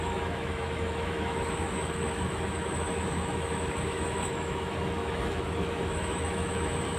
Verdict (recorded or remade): remade